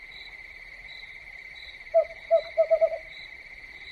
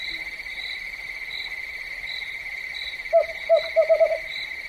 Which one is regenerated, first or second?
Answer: first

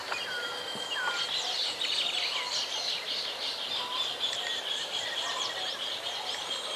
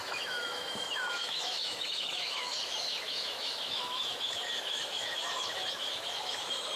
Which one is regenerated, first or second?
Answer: second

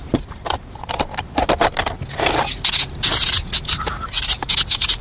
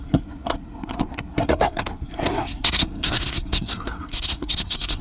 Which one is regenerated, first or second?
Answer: second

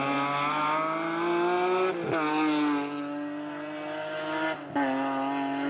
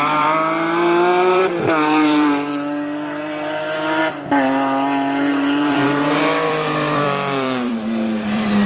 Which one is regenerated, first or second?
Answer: second